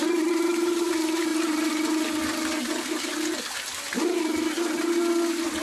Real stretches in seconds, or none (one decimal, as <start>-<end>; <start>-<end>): 0.0-5.6